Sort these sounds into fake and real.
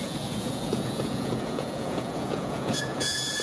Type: fake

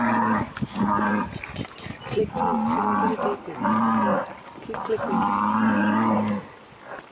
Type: real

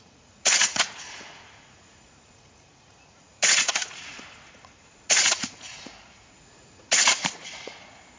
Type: fake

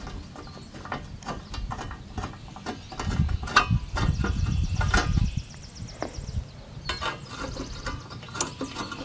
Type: real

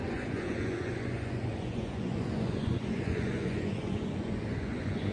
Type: fake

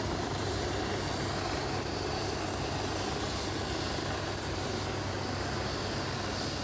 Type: real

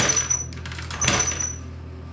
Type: real